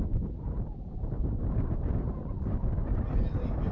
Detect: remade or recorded recorded